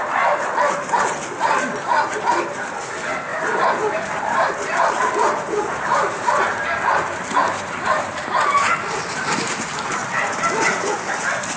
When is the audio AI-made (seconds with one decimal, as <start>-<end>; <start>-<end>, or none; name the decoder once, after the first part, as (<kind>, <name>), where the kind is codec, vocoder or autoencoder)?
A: 3.3-8.0 (vocoder, BigVGAN v2)